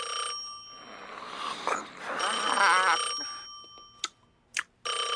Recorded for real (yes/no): yes